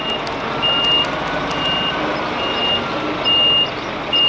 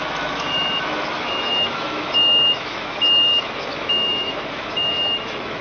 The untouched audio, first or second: first